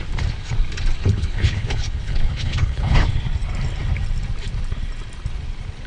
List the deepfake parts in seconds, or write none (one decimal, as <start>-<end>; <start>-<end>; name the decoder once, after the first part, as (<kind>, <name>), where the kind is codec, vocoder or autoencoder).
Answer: 1.0-3.2 (codec, HILCodec)